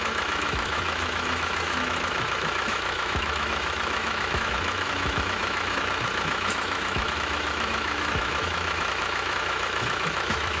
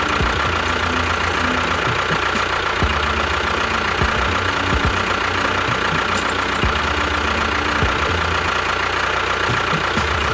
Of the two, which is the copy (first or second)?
first